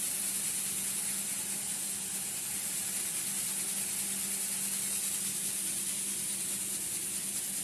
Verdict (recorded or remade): recorded